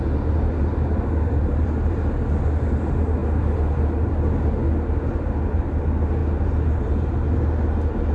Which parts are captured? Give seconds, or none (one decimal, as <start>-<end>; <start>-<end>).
0.0-1.4; 2.0-8.1